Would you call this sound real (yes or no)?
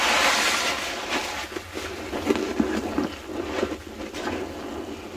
yes